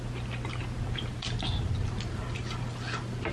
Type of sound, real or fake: real